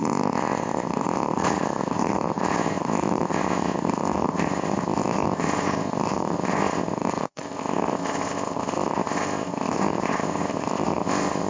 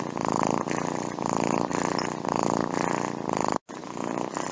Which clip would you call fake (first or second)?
first